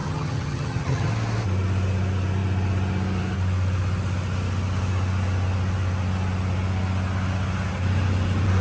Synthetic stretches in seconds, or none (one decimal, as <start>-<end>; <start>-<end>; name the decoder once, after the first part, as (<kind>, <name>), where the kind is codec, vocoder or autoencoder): 0.0-1.1 (vocoder, HiFi-GAN)